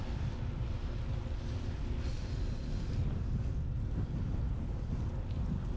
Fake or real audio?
real